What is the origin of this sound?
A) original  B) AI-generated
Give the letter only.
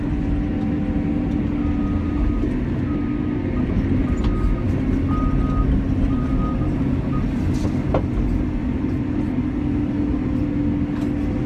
A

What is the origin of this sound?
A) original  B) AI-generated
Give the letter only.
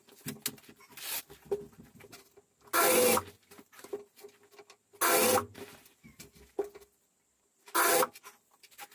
A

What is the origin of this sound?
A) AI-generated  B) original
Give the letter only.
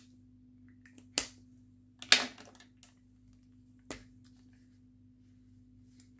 B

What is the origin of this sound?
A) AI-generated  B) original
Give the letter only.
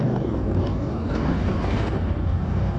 A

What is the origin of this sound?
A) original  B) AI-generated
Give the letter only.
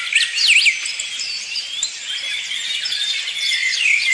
A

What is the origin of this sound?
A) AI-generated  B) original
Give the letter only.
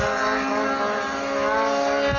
B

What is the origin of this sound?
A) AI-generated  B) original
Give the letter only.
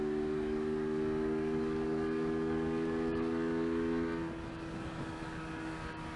A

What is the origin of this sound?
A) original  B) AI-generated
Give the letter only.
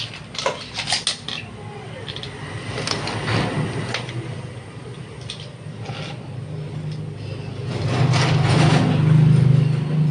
A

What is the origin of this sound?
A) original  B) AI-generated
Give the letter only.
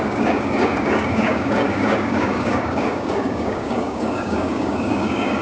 B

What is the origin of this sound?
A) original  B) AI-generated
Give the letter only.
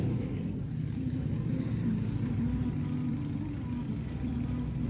A